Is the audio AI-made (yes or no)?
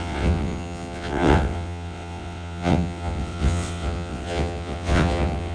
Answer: yes